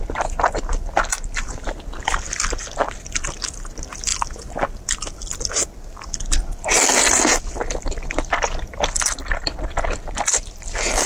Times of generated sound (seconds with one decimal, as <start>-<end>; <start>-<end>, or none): none